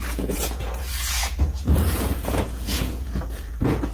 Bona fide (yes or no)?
no